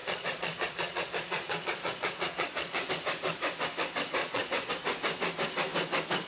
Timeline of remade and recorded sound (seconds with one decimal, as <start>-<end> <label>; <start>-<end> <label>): 0.0-2.9 remade; 2.9-4.2 recorded; 4.2-4.7 remade; 4.7-6.3 recorded